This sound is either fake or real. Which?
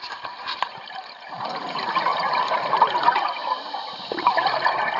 fake